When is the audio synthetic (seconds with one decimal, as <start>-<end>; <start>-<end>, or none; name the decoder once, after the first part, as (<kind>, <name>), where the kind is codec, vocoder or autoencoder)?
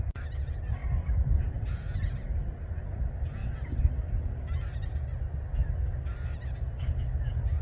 none